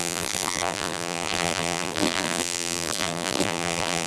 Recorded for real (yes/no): no